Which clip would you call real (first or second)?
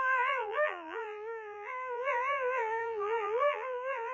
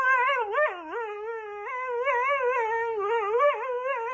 second